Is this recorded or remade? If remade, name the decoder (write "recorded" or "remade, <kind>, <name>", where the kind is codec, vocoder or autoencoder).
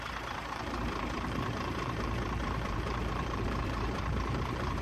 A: remade, vocoder, BigVGAN v2